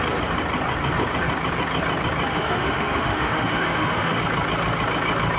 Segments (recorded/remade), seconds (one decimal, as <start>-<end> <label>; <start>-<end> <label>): 0.0-2.3 recorded; 2.3-4.2 remade; 4.2-5.4 recorded